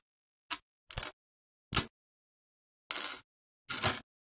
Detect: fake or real real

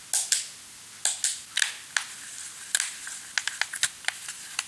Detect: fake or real real